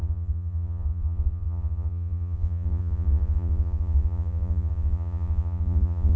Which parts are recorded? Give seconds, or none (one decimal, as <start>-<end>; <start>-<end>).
none